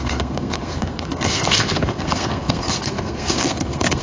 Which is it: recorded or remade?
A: remade